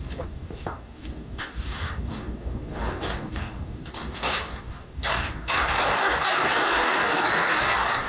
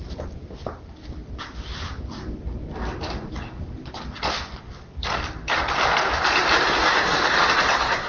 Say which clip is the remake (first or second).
first